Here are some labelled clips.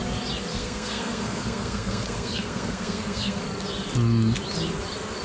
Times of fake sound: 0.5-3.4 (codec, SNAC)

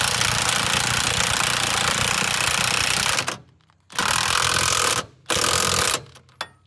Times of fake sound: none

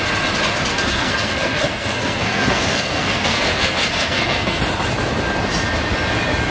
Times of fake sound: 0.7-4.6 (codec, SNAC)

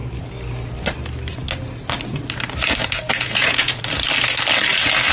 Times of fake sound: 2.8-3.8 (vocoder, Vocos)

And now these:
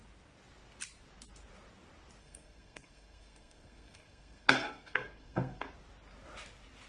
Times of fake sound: 2.2-5.7 (codec, SNAC)

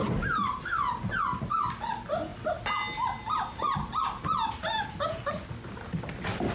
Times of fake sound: none

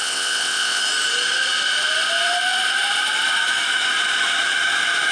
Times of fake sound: 0.0-0.8 (vocoder, WaveNeXt)

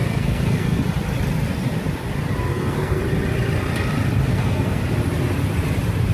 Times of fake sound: 0.0-0.8 (codec, SNAC); 2.5-3.0; 4.3-4.8